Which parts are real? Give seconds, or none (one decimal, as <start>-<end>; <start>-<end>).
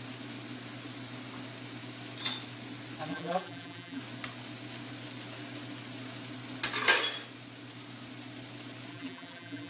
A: 0.0-3.1; 4.0-8.9